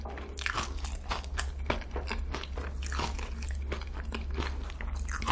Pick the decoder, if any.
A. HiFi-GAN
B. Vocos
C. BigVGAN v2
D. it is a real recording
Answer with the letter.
D